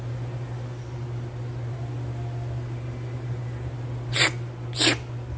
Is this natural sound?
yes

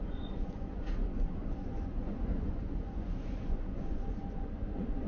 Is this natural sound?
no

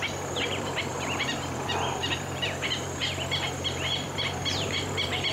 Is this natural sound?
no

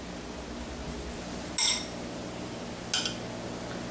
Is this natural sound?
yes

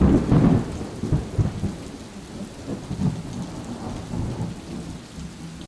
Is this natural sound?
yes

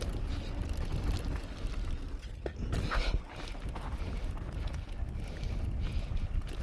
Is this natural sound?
yes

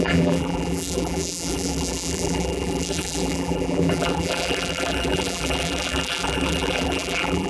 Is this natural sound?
no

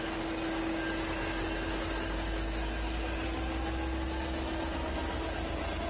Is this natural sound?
yes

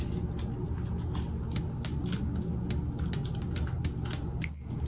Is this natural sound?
yes